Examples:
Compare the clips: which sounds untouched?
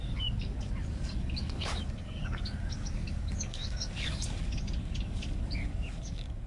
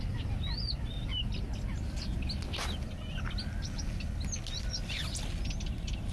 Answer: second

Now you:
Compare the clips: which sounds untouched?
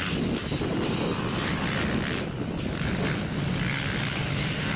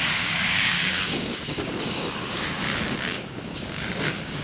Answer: first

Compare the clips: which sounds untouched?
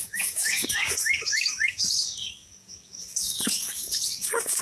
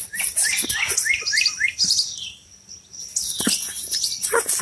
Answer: second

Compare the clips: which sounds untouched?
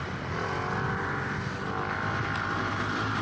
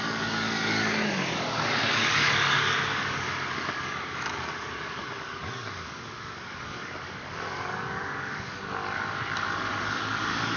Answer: first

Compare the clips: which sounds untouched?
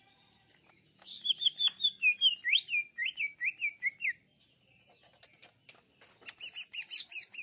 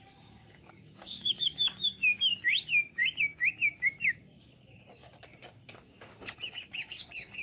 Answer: first